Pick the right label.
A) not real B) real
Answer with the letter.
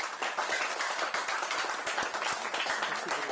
B